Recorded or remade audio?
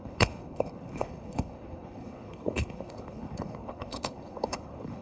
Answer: remade